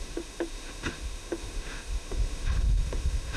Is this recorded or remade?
remade